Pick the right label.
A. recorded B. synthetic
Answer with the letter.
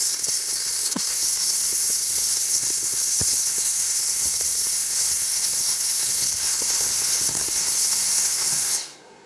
B